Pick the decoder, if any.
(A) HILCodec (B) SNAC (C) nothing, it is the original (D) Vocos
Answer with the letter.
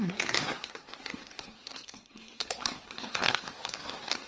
B